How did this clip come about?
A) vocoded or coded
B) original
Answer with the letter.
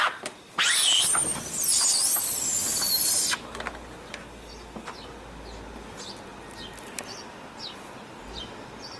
B